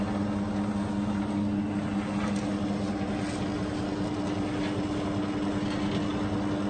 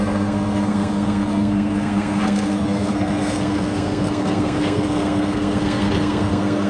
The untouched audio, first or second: first